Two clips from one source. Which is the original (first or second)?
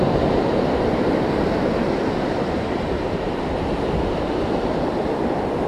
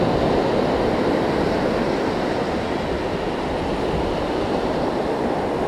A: second